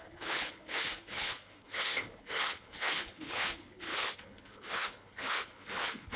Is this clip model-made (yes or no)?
yes